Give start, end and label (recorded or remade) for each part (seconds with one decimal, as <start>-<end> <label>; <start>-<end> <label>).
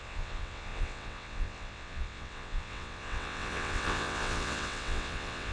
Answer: 0.0-5.5 remade